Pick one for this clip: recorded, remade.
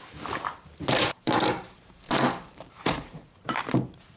remade